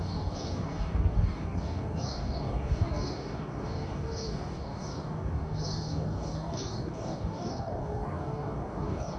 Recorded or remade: remade